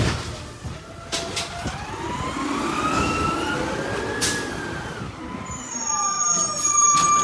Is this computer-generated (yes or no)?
no